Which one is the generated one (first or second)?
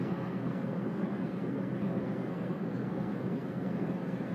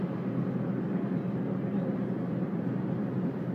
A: first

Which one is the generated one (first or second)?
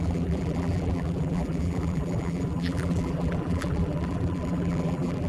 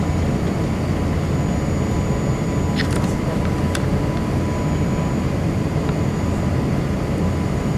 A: first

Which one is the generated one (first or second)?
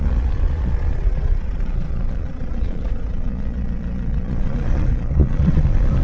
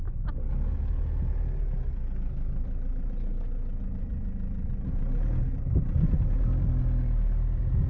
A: first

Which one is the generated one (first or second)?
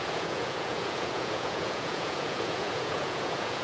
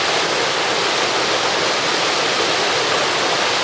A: first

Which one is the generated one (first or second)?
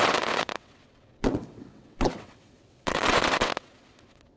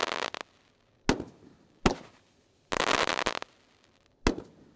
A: first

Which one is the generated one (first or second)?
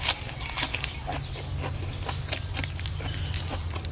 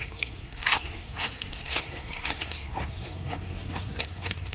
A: second